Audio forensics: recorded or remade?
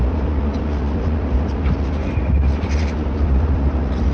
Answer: remade